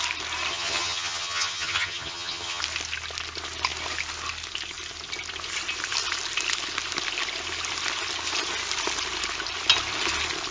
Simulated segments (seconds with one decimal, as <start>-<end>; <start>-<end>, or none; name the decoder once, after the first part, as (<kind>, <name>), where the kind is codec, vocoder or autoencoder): 0.5-2.6 (vocoder, HiFi-GAN)